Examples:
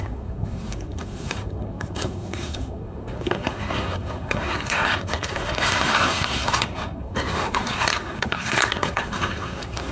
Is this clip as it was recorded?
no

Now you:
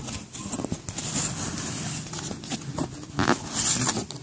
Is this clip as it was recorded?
yes